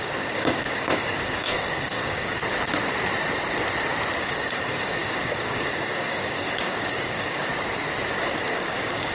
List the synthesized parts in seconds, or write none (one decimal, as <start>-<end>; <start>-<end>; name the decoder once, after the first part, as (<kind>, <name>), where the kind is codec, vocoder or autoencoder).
0.0-2.4 (codec, DAC); 4.2-7.5; 8.2-9.1